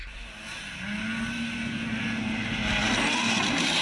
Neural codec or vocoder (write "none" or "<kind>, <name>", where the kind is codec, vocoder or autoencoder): none